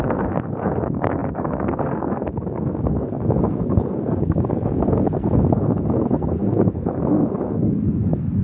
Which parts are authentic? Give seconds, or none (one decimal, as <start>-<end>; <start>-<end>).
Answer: none